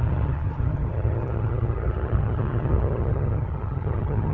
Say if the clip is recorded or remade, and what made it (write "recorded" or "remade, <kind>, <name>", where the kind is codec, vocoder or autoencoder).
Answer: remade, vocoder, HiFi-GAN